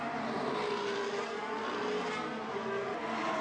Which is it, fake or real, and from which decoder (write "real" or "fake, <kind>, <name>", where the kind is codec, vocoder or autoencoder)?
real